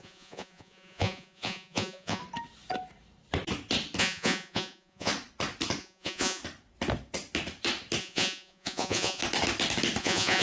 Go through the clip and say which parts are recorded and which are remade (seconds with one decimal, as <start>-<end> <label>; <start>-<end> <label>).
0.0-2.2 remade; 2.2-4.0 recorded; 4.0-5.1 remade; 5.1-5.8 recorded; 5.8-6.4 remade; 6.4-8.0 recorded; 8.0-9.2 remade; 9.2-10.0 recorded; 10.0-10.4 remade